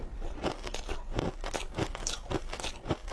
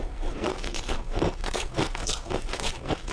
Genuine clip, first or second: first